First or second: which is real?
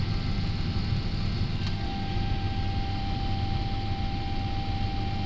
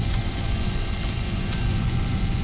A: first